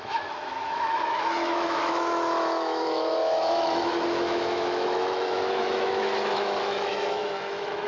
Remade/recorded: remade